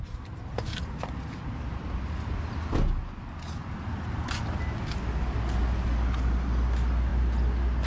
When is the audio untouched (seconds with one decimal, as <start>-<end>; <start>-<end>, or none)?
0.0-7.9